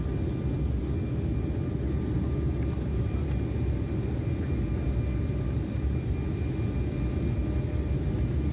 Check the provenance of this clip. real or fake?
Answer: real